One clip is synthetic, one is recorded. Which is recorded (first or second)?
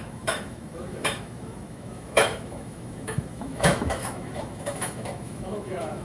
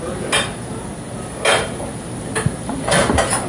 second